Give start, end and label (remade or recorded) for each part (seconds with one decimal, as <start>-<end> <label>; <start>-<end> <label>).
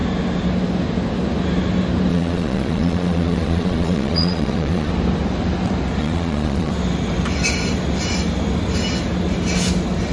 0.0-2.1 recorded; 2.1-4.9 remade; 4.9-6.0 recorded; 6.0-6.7 remade; 6.7-10.1 recorded